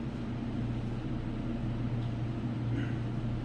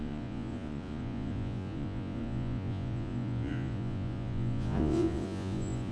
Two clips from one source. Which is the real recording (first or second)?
first